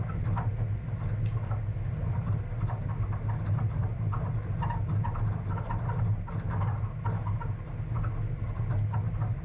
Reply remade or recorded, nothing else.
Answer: recorded